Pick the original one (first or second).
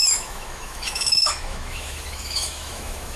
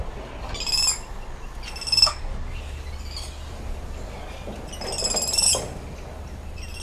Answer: second